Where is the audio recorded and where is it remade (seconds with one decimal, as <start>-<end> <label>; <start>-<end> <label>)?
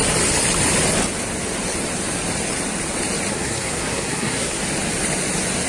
0.0-3.3 recorded; 3.3-4.6 remade; 4.6-5.7 recorded